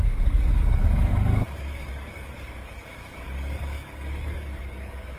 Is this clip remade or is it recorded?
remade